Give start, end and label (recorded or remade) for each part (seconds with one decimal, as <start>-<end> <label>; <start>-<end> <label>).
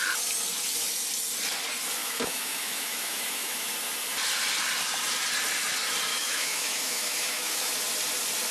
0.0-2.0 recorded; 2.0-3.7 remade; 3.7-6.1 recorded; 6.1-7.7 remade; 7.7-8.5 recorded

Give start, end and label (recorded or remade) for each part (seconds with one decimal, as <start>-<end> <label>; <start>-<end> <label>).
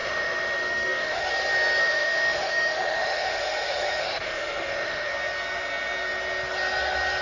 0.0-1.3 remade; 1.3-1.8 recorded; 1.8-5.1 remade; 5.1-7.2 recorded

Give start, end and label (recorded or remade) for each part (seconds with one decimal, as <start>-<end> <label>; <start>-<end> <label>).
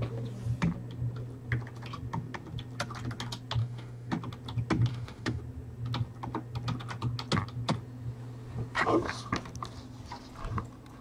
0.0-3.6 recorded; 3.6-4.1 remade; 4.1-4.9 recorded; 4.9-5.4 remade; 5.4-11.0 recorded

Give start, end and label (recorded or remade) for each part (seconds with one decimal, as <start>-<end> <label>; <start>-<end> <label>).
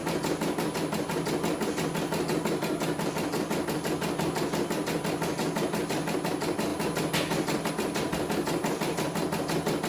0.0-9.9 recorded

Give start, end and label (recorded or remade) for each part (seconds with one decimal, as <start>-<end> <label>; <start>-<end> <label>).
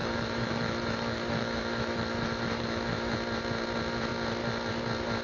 0.0-3.1 remade; 3.1-5.2 recorded